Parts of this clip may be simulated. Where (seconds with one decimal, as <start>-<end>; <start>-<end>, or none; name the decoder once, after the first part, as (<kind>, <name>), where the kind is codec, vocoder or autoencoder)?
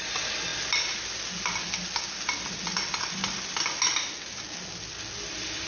none